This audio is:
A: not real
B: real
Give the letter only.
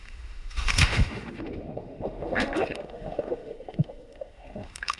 A